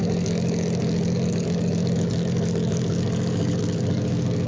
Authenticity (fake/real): fake